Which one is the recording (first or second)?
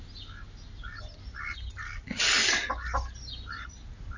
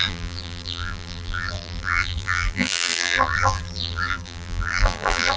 first